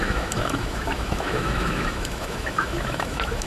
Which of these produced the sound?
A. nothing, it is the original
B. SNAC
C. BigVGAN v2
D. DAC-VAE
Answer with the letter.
D